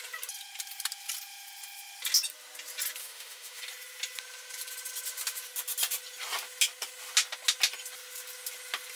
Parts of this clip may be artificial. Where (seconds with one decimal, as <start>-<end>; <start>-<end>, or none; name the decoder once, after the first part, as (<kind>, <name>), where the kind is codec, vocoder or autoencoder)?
3.0-3.6 (autoencoder, DAC-VAE)